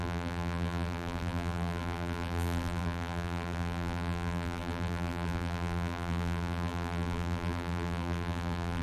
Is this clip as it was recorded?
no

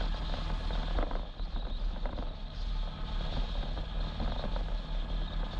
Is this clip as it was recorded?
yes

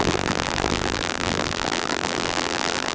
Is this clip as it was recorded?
no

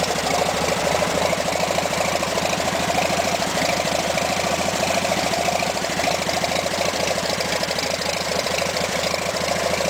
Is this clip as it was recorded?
no